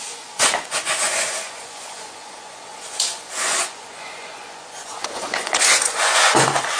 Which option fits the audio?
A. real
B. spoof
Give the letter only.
B